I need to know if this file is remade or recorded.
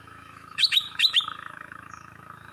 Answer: remade